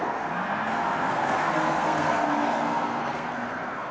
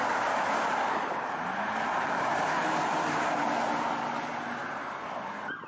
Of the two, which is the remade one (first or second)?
first